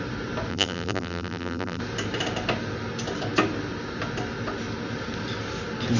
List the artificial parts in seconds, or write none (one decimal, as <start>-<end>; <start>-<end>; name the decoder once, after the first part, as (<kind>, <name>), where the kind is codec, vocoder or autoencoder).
0.5-1.8 (vocoder, BigVGAN v2)

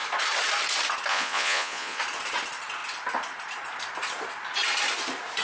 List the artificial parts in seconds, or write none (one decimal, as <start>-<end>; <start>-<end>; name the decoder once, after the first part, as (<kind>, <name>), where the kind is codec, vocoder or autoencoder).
1.1-2.0 (vocoder, Vocos)

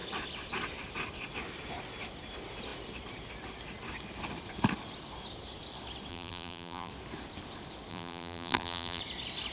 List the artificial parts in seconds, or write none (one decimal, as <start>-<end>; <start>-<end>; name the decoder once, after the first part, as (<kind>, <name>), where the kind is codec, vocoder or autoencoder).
6.1-6.9 (vocoder, BigVGAN v2); 7.9-9.0

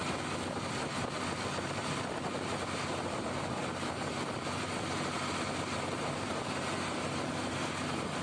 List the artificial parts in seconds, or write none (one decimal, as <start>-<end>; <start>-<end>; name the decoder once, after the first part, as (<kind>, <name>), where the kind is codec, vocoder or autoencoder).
none